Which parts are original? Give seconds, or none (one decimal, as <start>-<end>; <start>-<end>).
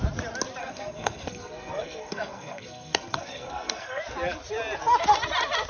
0.0-0.6; 4.0-5.7